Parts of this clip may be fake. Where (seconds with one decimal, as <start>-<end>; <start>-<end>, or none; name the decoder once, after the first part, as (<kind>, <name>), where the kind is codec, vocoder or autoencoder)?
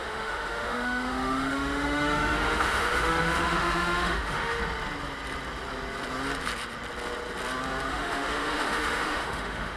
0.0-4.6 (autoencoder, DAC-VAE); 7.9-9.8